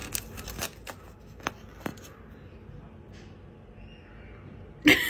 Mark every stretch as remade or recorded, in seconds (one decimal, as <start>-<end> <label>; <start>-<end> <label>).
0.0-5.1 recorded